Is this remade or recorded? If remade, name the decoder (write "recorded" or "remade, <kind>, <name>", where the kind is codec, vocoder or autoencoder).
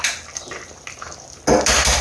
recorded